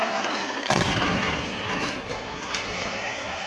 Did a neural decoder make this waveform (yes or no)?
yes